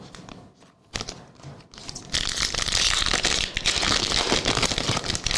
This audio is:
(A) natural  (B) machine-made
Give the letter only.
A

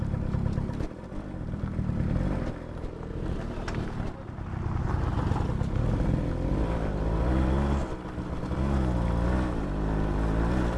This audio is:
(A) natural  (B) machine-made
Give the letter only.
A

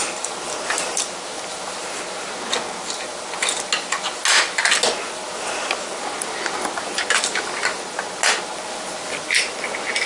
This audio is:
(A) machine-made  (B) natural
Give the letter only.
B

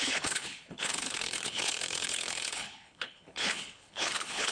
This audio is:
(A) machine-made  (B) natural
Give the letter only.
A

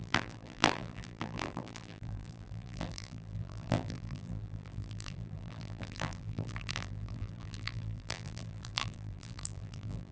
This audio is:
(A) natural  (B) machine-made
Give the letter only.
B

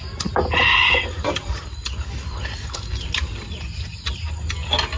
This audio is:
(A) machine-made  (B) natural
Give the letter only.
B